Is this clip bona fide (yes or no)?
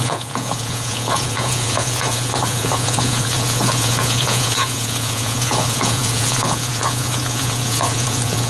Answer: no